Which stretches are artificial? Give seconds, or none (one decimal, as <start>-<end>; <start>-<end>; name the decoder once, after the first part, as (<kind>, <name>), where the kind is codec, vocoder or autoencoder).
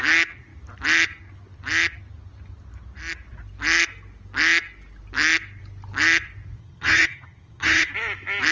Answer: 6.6-7.9 (vocoder, HiFi-GAN)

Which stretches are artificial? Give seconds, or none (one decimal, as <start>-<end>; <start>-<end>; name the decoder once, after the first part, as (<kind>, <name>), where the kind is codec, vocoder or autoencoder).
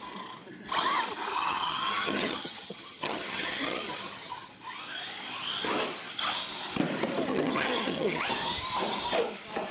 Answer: 1.3-4.5 (vocoder, HiFi-GAN); 7.3-8.2